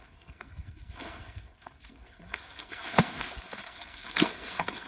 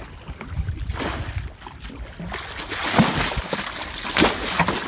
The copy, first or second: first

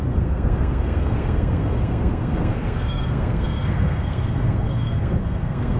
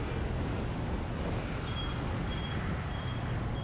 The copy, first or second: first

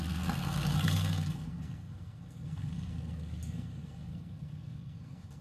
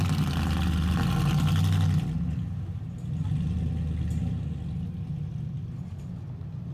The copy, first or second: first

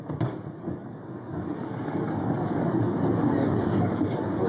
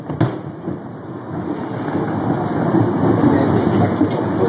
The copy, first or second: first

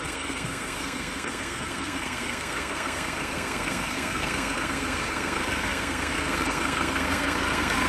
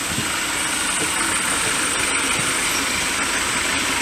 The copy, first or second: first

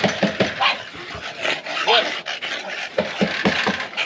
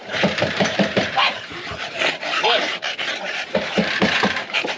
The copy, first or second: second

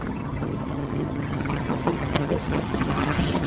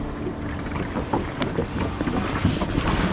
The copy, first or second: first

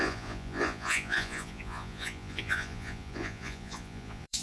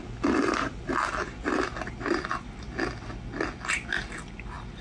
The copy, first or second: first